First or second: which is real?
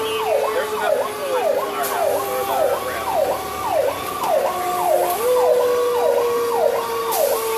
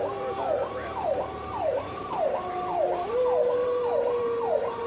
first